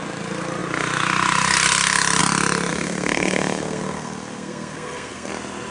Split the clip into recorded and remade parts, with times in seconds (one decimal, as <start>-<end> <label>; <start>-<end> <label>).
0.0-2.7 recorded; 2.7-5.3 remade; 5.3-5.7 recorded